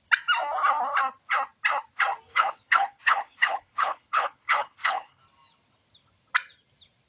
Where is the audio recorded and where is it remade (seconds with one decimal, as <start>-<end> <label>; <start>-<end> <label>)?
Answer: 0.0-2.3 recorded; 2.3-5.2 remade; 5.2-7.1 recorded